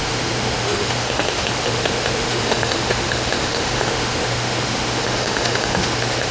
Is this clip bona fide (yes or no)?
no